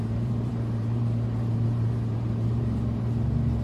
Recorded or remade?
remade